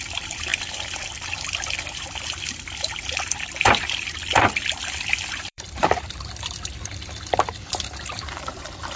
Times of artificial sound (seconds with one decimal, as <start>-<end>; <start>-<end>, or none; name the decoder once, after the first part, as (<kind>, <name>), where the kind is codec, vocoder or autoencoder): 0.0-0.5 (vocoder, BigVGAN v2); 1.1-9.0